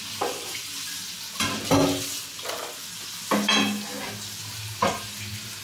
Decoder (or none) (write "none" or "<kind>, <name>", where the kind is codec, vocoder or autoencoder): none